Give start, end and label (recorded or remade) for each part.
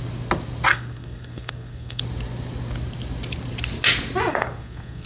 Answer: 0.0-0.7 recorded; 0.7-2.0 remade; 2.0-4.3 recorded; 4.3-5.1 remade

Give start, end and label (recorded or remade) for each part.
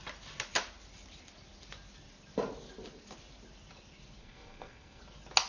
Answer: 0.0-4.2 recorded; 4.2-5.0 remade; 5.0-5.5 recorded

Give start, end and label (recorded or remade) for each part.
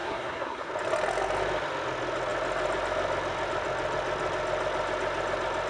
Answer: 0.0-0.7 remade; 0.7-5.7 recorded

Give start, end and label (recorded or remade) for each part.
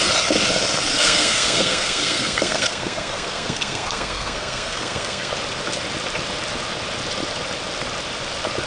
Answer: 0.0-0.9 recorded; 0.9-5.3 remade; 5.3-8.7 recorded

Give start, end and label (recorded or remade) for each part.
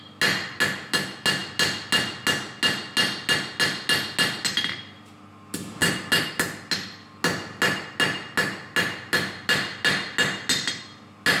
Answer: 0.0-11.4 recorded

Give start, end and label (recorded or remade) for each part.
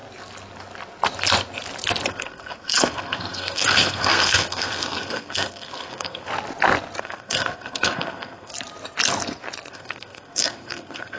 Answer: 0.0-2.1 recorded; 2.1-6.3 remade; 6.3-7.0 recorded; 7.0-8.5 remade; 8.5-9.7 recorded; 9.7-11.2 remade